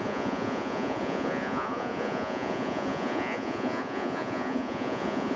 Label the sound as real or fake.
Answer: fake